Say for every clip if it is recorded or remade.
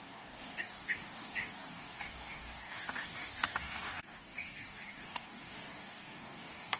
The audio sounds remade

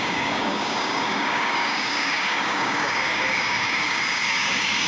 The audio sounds remade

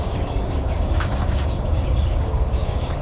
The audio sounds remade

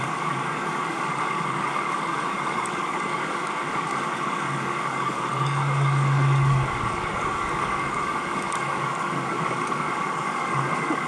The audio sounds remade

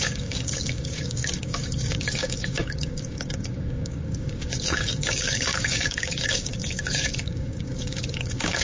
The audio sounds remade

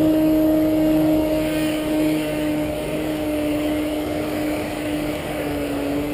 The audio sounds remade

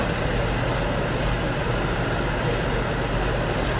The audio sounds recorded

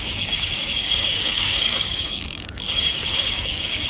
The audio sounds remade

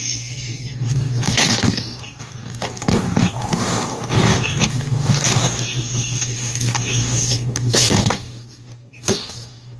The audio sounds remade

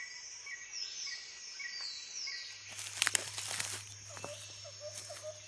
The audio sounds recorded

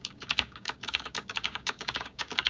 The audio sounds remade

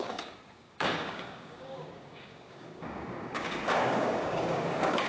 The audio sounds remade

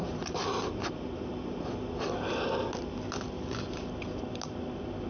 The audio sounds recorded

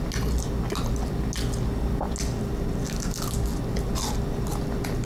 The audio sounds recorded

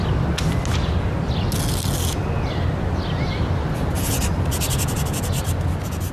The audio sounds recorded